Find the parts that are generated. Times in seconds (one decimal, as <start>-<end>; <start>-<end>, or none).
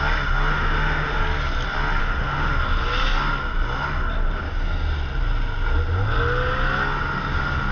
0.5-1.2; 2.0-2.5